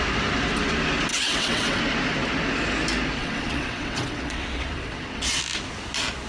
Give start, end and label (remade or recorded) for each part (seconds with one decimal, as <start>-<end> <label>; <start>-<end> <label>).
0.0-1.1 recorded; 1.1-1.8 remade; 1.8-3.2 recorded; 3.2-5.4 remade; 5.4-6.3 recorded